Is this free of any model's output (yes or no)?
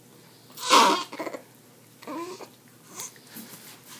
yes